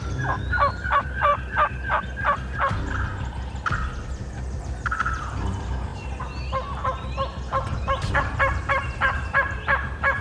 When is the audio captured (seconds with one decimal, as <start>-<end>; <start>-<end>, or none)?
1.3-4.6; 5.9-8.2